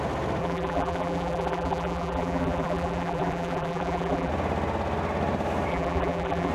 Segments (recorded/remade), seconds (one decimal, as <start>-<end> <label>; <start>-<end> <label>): 0.0-0.4 recorded; 0.4-4.3 remade; 4.3-5.7 recorded; 5.7-6.5 remade